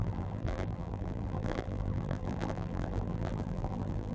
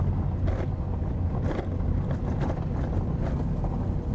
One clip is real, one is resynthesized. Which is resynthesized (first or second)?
first